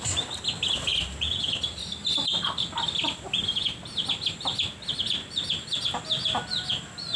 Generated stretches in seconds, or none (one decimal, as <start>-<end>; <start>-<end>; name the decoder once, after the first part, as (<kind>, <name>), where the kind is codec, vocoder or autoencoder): none